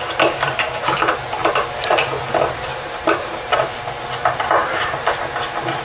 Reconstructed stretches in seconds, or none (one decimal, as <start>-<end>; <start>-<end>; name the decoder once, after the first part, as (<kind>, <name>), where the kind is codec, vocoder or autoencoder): 2.7-3.7 (vocoder, BigVGAN v2); 4.6-5.1